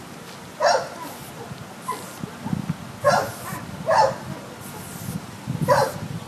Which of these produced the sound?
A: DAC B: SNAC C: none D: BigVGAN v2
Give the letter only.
C